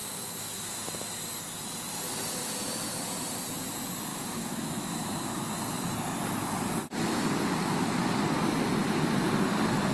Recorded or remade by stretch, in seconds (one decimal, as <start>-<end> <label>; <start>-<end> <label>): 0.0-0.7 remade; 0.7-4.1 recorded; 4.1-5.4 remade; 5.4-9.9 recorded